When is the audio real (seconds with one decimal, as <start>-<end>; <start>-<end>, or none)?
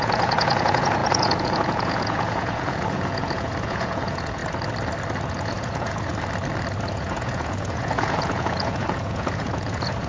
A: 4.4-5.3; 6.1-6.9